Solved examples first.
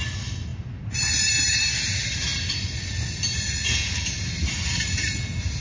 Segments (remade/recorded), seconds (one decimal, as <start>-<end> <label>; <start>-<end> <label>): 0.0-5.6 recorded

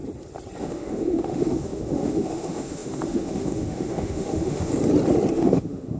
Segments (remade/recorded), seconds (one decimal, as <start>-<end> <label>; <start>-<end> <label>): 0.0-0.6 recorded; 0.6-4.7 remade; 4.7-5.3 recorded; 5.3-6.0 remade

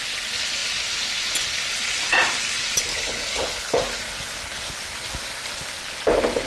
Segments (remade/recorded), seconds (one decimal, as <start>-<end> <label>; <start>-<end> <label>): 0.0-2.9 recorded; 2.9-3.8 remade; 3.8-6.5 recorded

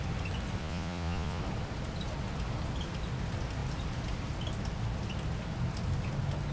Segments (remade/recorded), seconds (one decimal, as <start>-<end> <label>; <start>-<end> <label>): 0.0-0.6 recorded; 0.6-1.4 remade; 1.4-6.5 recorded

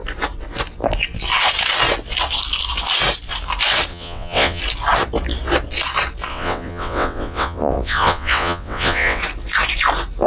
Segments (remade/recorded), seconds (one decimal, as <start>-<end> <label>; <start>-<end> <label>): 0.0-3.9 recorded; 3.9-4.6 remade; 4.6-6.3 recorded; 6.3-9.2 remade; 9.2-10.3 recorded

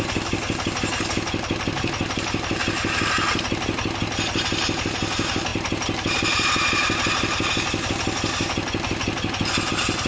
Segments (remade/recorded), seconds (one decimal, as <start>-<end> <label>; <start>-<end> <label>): 0.0-10.1 recorded

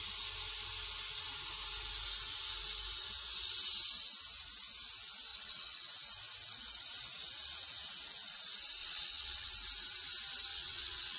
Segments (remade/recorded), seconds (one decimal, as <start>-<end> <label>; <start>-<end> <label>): 0.0-5.3 recorded; 5.3-5.9 remade; 5.9-8.8 recorded; 8.8-9.5 remade; 9.5-10.5 recorded; 10.5-11.2 remade